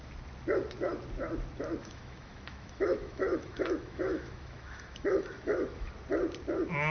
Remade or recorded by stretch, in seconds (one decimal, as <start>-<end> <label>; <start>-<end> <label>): 0.0-1.8 recorded; 1.8-5.9 remade; 5.9-6.9 recorded